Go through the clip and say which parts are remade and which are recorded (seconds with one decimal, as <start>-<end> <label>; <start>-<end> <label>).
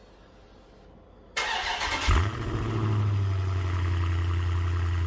0.0-5.1 recorded